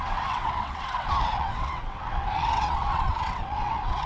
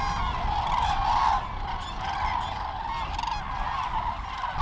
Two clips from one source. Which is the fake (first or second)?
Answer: first